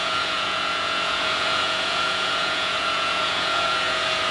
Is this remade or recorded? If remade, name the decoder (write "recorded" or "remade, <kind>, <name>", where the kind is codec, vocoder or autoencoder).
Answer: remade, vocoder, Vocos